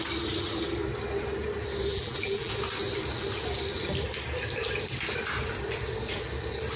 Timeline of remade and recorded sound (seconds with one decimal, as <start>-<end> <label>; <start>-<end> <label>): 0.0-1.9 recorded; 1.9-2.5 remade; 2.5-6.8 recorded